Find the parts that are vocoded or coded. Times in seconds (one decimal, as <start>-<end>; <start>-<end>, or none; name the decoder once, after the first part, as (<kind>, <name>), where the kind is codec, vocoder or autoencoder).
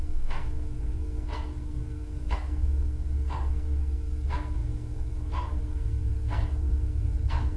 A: 0.0-7.6 (codec, SNAC)